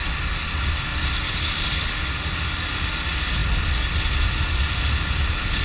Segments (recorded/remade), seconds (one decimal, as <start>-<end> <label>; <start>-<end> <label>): 0.0-5.6 recorded